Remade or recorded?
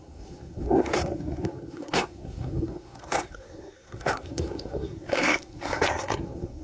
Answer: remade